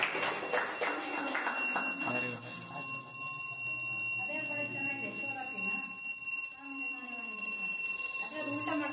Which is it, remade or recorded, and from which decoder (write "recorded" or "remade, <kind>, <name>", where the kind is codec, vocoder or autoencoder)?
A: recorded